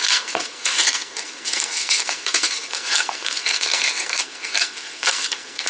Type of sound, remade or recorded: remade